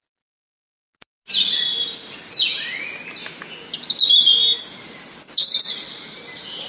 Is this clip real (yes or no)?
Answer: yes